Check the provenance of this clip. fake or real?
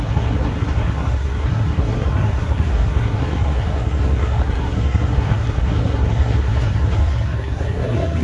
fake